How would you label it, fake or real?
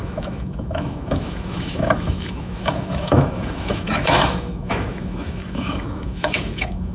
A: fake